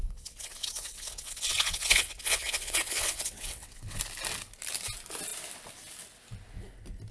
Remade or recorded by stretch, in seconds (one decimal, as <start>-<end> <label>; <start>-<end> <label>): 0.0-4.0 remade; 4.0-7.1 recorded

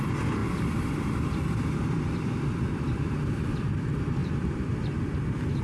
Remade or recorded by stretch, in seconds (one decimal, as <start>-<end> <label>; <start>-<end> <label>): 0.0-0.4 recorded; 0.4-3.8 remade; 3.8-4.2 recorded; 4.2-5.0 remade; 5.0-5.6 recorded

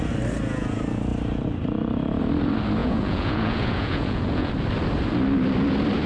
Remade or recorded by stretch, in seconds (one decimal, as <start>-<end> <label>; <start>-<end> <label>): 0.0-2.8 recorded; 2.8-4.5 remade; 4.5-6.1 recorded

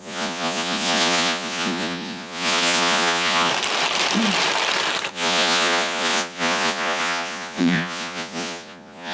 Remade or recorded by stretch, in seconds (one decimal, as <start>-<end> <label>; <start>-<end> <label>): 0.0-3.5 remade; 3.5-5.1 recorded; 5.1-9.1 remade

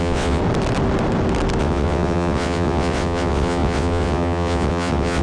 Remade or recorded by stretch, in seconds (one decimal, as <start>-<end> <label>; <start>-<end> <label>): 0.0-0.4 remade; 0.4-1.6 recorded; 1.6-5.2 remade